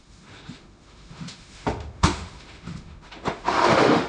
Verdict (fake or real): fake